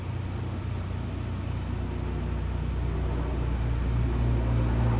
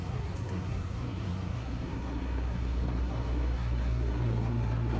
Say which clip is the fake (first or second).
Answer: second